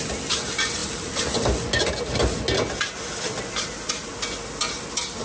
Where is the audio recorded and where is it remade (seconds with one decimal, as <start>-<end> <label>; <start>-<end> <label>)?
0.0-5.2 recorded